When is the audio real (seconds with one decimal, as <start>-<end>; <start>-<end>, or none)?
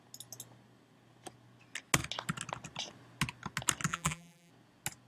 0.0-3.9; 4.5-5.1